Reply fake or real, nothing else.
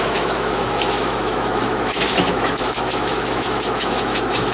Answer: fake